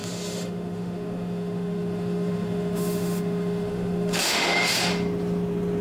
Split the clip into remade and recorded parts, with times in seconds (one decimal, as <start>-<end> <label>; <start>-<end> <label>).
0.0-4.9 remade; 4.9-5.8 recorded